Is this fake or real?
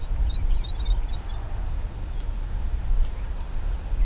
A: real